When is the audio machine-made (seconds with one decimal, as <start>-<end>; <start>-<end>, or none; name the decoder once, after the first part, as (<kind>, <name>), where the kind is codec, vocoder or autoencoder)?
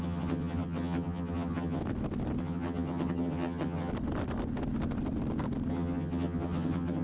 0.0-1.8 (vocoder, HiFi-GAN); 2.4-3.9; 5.7-7.0